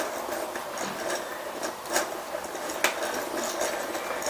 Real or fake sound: real